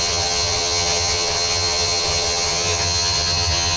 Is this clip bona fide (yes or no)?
no